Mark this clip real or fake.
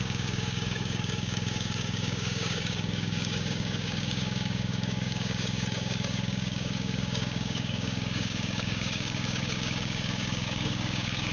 fake